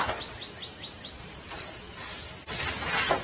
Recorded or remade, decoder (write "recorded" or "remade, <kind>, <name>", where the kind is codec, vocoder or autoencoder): recorded